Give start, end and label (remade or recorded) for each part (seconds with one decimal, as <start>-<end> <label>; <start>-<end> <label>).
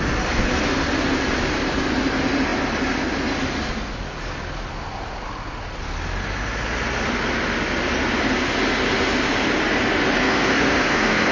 0.0-10.2 recorded; 10.2-11.3 remade